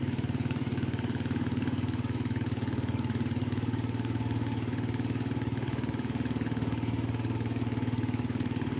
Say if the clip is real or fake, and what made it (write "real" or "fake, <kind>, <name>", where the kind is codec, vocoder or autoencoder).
fake, codec, DAC